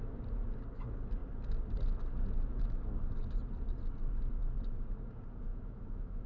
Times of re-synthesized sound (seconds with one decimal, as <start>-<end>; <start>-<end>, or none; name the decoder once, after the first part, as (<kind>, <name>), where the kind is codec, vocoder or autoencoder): 5.5-6.3 (autoencoder, DAC-VAE)